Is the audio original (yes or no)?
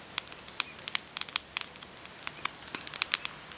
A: yes